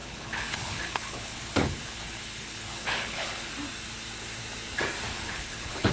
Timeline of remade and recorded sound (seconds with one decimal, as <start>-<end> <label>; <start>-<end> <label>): 0.0-3.5 remade; 3.5-5.1 recorded; 5.1-5.9 remade